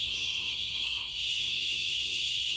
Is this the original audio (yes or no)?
no